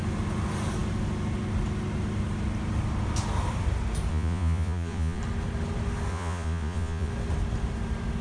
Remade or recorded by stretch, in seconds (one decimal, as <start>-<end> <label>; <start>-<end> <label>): 0.0-4.1 recorded; 4.1-5.2 remade; 5.2-6.1 recorded; 6.1-7.1 remade; 7.1-8.2 recorded